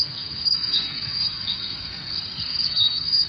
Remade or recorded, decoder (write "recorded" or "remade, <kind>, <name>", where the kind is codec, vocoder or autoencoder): remade, codec, SNAC